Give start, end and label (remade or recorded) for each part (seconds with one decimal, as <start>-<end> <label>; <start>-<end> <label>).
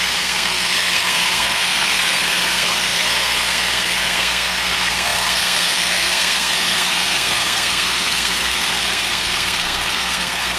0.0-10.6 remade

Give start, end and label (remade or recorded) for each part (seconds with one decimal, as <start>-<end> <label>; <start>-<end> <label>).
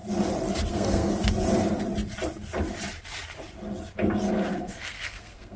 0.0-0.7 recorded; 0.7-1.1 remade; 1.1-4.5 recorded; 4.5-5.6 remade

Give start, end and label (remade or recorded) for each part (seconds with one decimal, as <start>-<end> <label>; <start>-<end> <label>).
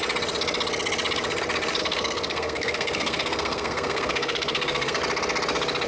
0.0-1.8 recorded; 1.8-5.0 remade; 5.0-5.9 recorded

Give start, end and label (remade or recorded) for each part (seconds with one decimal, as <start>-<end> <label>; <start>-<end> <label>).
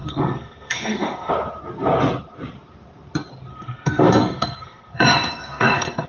0.0-1.3 remade; 1.3-3.5 recorded; 3.5-6.1 remade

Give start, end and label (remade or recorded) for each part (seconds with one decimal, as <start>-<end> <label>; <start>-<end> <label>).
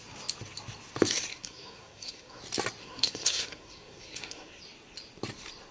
0.0-1.3 recorded; 1.3-2.4 remade; 2.4-2.8 recorded; 2.8-4.6 remade; 4.6-5.7 recorded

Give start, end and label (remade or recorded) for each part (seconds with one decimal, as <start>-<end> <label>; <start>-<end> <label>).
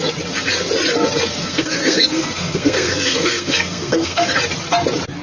0.0-1.4 recorded; 1.4-4.3 remade; 4.3-5.2 recorded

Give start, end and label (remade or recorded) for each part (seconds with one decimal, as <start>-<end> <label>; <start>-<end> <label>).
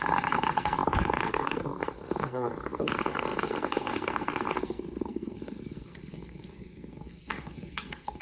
0.0-8.2 remade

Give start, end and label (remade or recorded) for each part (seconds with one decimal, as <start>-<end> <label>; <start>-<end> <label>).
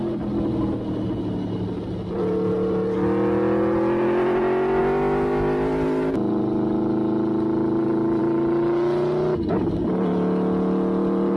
0.0-11.4 recorded